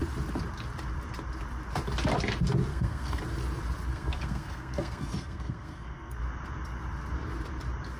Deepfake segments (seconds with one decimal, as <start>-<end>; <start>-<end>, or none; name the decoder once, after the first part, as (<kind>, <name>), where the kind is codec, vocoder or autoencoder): 2.7-3.2 (codec, SNAC); 3.9-6.2